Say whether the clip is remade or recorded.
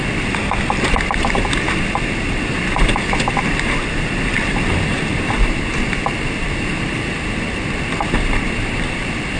recorded